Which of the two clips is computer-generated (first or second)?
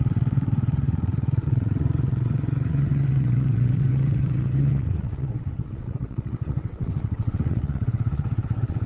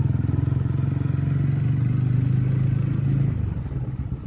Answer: first